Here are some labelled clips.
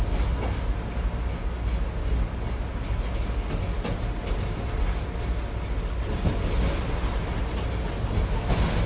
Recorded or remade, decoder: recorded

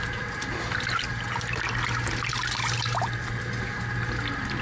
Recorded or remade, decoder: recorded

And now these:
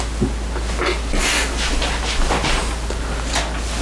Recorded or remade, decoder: recorded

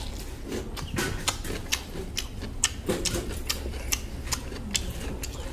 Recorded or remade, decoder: recorded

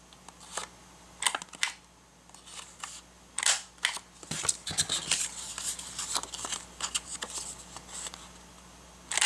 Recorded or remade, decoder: recorded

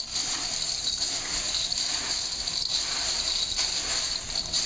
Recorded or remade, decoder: recorded